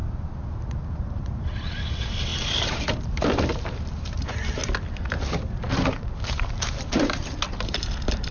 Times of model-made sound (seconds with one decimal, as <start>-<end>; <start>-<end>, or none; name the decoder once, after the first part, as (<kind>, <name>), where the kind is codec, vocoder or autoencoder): 0.0-4.6 (vocoder, BigVGAN v2); 5.7-8.3